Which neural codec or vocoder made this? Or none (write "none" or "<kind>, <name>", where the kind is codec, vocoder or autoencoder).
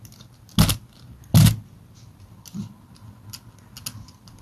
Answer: none